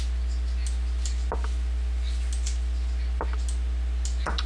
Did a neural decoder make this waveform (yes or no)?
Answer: no